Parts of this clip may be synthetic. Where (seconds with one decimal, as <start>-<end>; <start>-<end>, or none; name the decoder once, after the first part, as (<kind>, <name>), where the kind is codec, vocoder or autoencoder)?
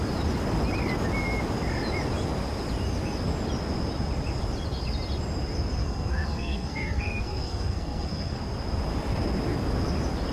5.8-8.4 (codec, SNAC)